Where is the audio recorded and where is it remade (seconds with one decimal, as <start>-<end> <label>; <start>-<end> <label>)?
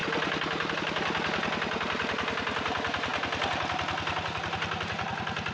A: 0.0-5.5 recorded